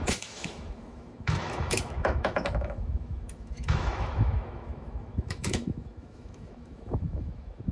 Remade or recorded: remade